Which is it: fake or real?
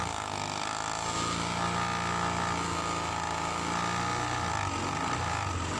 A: real